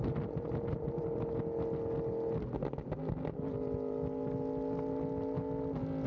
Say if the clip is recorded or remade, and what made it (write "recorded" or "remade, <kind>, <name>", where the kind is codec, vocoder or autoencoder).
recorded